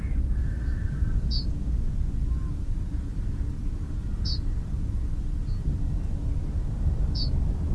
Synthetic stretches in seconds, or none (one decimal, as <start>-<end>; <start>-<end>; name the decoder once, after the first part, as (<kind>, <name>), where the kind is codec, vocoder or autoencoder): none